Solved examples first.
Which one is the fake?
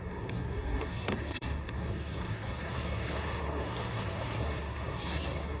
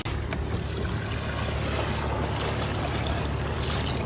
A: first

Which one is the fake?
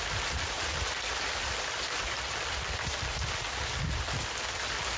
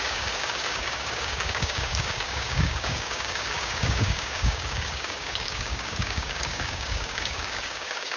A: second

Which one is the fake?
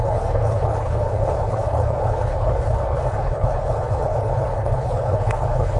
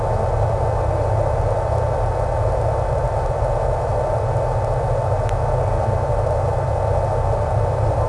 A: first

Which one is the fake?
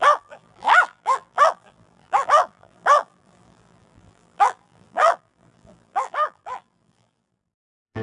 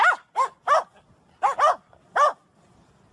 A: first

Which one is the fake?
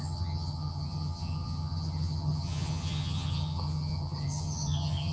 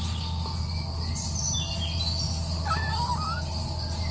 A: first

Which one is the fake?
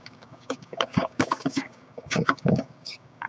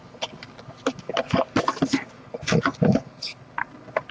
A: first